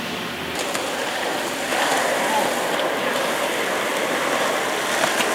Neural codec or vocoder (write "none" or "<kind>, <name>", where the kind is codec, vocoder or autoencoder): none